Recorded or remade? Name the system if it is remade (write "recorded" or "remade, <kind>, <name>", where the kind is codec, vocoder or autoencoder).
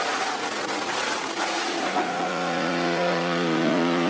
remade, vocoder, Vocos